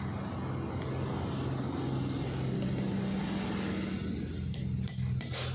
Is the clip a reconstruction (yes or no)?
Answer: no